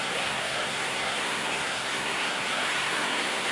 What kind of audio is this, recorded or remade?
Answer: remade